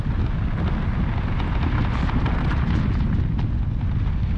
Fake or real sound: real